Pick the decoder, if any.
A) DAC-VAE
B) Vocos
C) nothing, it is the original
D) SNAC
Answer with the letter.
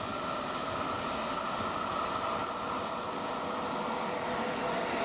C